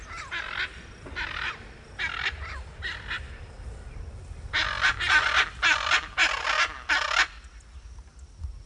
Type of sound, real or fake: real